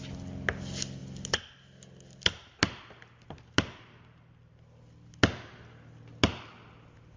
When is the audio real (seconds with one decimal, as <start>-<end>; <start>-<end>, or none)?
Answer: 0.0-7.2